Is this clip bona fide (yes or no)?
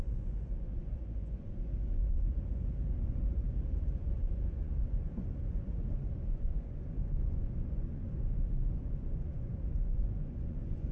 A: no